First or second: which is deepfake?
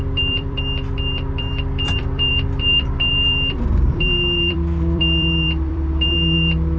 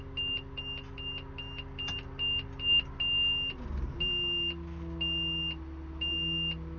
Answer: first